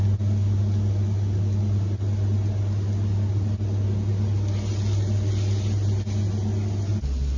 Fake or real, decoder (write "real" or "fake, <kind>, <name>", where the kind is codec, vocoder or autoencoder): real